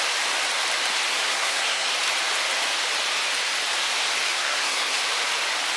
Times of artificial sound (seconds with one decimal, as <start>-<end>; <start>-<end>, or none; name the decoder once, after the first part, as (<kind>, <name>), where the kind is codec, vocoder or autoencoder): 1.1-1.9 (codec, SNAC); 4.3-5.0